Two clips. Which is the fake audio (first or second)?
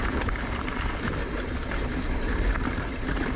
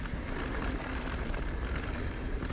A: first